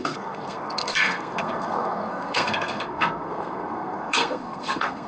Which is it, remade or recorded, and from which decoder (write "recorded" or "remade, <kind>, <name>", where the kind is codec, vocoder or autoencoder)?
remade, codec, SNAC